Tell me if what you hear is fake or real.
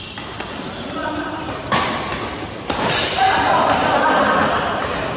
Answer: real